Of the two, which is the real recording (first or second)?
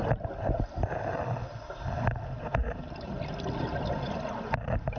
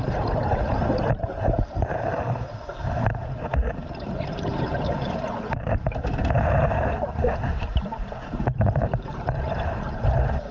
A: first